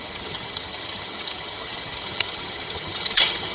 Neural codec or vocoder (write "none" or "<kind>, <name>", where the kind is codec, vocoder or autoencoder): vocoder, HiFi-GAN